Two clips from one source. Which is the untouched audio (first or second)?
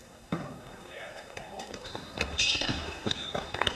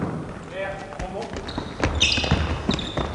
second